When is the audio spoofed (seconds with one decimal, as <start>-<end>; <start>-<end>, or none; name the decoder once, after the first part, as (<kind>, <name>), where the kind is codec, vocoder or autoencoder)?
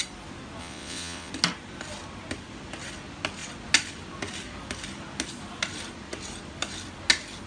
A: 0.6-1.3 (vocoder, WaveNeXt)